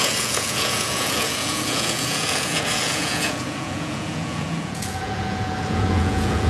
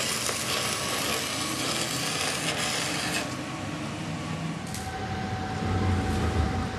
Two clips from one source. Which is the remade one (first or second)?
first